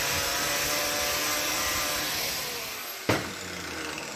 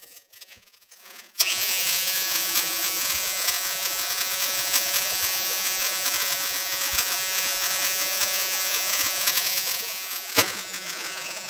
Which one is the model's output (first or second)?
second